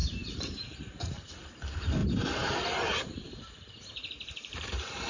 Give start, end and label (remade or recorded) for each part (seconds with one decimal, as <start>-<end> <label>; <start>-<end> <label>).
0.0-1.3 remade; 1.3-2.0 recorded; 2.0-5.1 remade

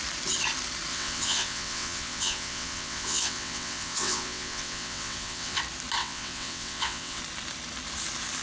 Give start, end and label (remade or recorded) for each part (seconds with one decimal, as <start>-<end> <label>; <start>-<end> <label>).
0.0-0.9 recorded; 0.9-5.6 remade; 5.6-6.0 recorded; 6.0-7.2 remade; 7.2-8.4 recorded

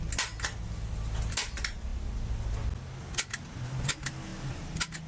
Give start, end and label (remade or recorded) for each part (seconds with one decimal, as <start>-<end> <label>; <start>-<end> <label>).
0.0-5.1 recorded

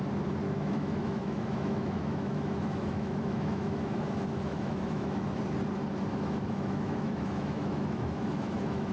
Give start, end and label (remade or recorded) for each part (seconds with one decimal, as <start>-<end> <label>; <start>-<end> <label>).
0.0-0.4 recorded; 0.4-5.4 remade; 5.4-6.1 recorded; 6.1-8.9 remade

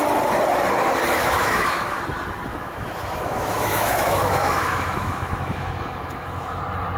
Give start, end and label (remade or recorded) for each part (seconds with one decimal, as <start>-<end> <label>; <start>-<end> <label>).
0.0-1.2 recorded; 1.2-2.0 remade; 2.0-2.5 recorded; 2.5-6.6 remade; 6.6-7.0 recorded

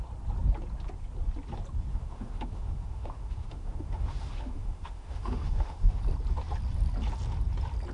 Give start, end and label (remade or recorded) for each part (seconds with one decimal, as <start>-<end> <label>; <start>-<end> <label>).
0.0-1.9 recorded; 1.9-6.0 remade; 6.0-7.9 recorded

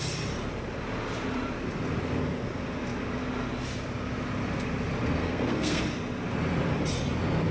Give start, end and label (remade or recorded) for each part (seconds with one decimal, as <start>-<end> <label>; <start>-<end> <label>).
0.0-5.2 recorded; 5.2-5.8 remade; 5.8-7.5 recorded